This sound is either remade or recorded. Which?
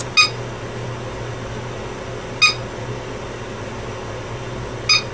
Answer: recorded